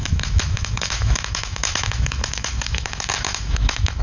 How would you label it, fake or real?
fake